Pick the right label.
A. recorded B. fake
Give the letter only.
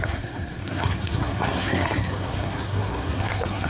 B